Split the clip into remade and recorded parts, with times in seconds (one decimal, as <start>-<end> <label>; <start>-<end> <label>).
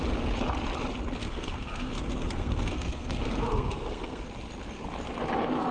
0.0-1.2 recorded; 1.2-4.3 remade; 4.3-5.7 recorded